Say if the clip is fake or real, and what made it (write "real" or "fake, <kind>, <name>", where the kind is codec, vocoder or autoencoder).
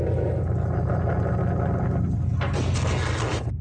real